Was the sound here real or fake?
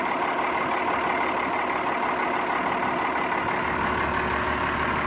real